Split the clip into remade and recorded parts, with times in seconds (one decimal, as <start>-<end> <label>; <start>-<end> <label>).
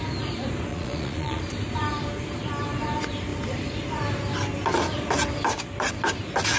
0.0-0.7 recorded; 0.7-1.4 remade; 1.4-6.6 recorded